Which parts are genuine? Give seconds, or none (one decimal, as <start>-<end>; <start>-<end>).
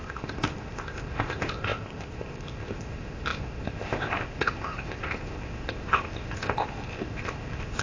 none